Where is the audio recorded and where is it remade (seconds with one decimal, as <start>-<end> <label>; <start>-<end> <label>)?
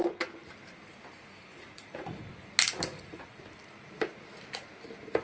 0.0-1.5 recorded; 1.5-2.2 remade; 2.2-2.9 recorded; 2.9-3.4 remade; 3.4-5.2 recorded